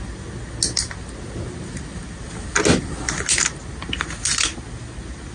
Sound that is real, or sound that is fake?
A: real